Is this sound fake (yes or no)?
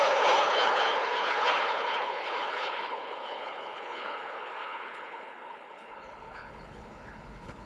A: yes